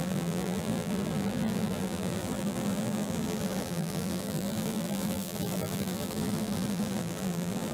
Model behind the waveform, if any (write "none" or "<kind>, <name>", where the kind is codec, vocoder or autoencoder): vocoder, BigVGAN v2